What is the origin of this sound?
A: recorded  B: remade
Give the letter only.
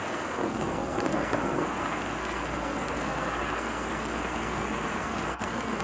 B